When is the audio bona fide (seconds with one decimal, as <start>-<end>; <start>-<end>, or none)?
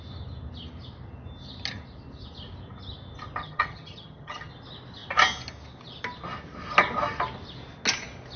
0.0-3.4; 4.5-8.4